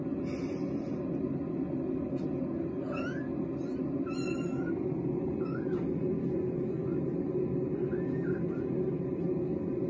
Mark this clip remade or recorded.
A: recorded